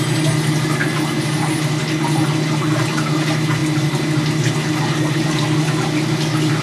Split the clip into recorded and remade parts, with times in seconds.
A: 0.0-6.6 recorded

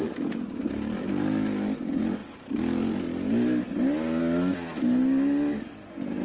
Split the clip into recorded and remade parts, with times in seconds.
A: 0.0-6.2 recorded

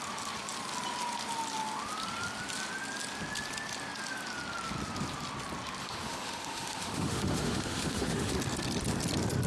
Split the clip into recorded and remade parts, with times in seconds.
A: 0.0-5.8 recorded; 5.8-8.3 remade; 8.3-9.5 recorded

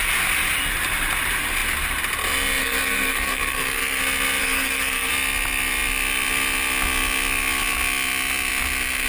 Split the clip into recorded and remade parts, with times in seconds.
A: 0.0-2.6 recorded; 2.6-4.0 remade; 4.0-4.4 recorded; 4.4-5.1 remade; 5.1-9.1 recorded

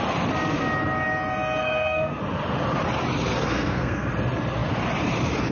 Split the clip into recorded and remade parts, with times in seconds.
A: 0.0-1.6 recorded; 1.6-2.2 remade; 2.2-3.4 recorded; 3.4-4.1 remade; 4.1-5.5 recorded

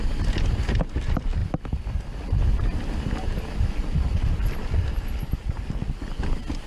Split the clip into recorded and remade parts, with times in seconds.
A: 0.0-6.7 recorded